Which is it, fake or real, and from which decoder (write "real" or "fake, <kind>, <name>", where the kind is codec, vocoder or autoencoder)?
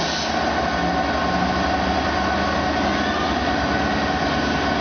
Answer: real